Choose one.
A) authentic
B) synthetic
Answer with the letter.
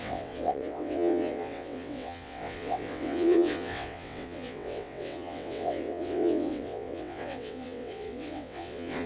B